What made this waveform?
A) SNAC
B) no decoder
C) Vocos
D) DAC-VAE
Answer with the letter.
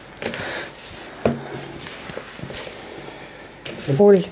B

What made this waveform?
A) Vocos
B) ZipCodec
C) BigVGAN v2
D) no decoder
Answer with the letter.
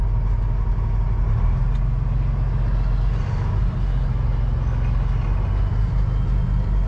D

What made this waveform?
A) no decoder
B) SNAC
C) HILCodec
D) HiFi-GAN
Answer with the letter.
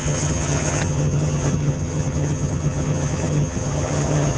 D